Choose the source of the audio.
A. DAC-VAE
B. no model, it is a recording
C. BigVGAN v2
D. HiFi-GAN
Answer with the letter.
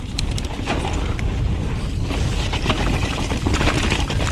B